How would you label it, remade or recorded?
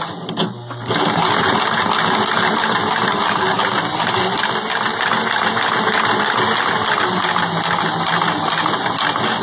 recorded